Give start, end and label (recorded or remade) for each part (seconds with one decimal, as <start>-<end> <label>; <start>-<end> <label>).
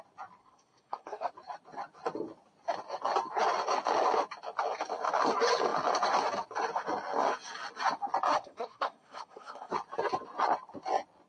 0.0-0.4 recorded; 0.4-1.3 remade; 1.3-8.3 recorded; 8.3-9.7 remade; 9.7-11.3 recorded